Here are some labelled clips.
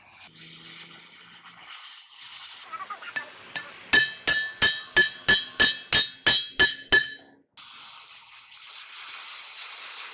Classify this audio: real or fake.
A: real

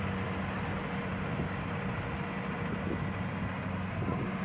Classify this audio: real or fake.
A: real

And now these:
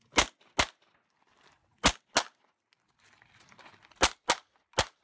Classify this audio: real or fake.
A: real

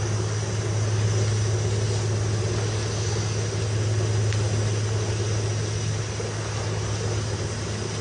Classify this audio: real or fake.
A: real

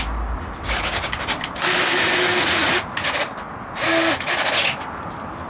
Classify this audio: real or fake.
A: real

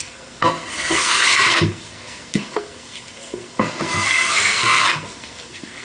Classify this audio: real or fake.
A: fake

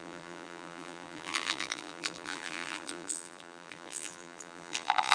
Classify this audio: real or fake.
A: fake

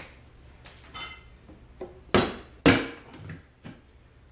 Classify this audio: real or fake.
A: real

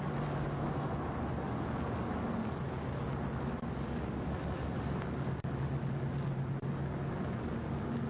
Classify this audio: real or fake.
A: real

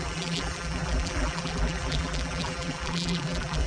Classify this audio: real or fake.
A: fake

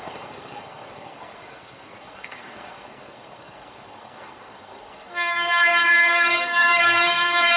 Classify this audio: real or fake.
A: fake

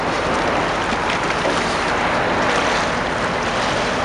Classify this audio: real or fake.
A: real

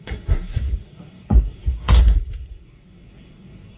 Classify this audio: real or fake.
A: fake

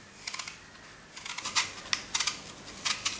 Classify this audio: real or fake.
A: real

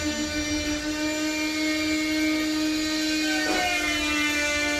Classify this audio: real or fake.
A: real